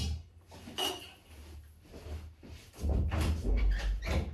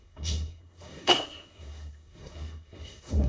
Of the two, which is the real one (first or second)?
first